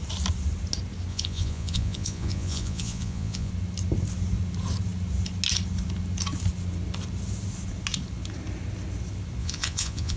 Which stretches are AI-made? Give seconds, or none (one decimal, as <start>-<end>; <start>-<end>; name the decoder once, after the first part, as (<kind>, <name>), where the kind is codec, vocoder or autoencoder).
1.1-3.5 (vocoder, Vocos); 9.4-10.2